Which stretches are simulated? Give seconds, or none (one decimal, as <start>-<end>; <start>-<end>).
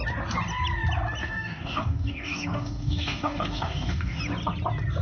1.2-4.2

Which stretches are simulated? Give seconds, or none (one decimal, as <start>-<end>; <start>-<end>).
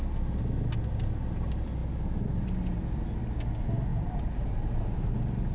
3.9-5.1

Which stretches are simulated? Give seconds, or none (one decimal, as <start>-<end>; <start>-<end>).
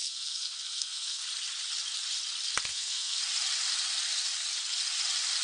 0.0-1.2; 2.7-3.2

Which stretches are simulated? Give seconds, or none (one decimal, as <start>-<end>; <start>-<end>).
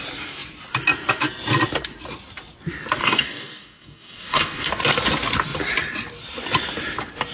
3.0-4.7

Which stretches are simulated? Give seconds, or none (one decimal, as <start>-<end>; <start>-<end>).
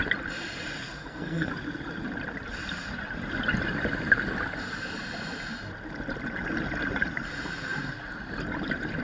0.8-1.5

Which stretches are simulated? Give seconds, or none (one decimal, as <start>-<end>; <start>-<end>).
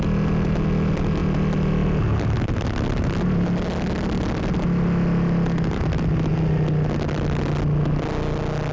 none